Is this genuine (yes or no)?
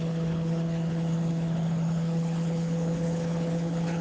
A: no